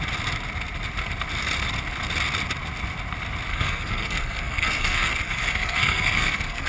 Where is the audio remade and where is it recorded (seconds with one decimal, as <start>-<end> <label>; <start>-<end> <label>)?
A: 0.0-3.5 recorded; 3.5-6.7 remade